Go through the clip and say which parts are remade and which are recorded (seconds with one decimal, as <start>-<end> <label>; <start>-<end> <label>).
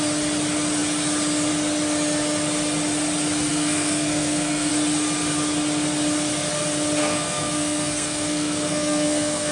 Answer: 0.0-3.5 recorded; 3.5-4.7 remade; 4.7-7.0 recorded; 7.0-9.5 remade